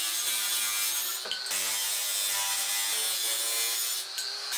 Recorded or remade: recorded